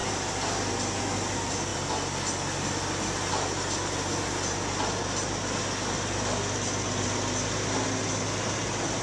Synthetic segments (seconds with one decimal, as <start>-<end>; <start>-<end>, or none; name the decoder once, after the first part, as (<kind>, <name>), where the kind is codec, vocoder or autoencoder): 0.0-1.0 (vocoder, BigVGAN v2)